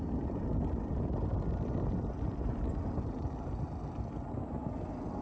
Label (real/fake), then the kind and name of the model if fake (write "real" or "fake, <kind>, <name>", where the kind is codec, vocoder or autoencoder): real